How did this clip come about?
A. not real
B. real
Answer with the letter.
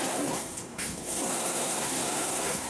A